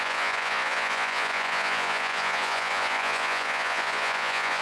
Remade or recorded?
remade